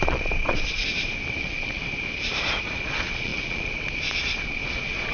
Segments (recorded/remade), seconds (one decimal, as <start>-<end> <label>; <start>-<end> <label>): 0.0-0.8 remade; 0.8-1.4 recorded; 1.4-1.8 remade; 1.8-2.4 recorded; 2.4-5.1 remade